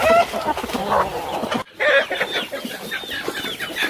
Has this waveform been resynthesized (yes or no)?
no